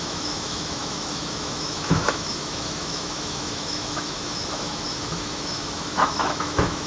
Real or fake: fake